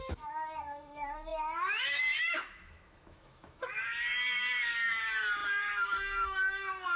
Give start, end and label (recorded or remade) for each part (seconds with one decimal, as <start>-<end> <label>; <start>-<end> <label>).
0.0-7.0 remade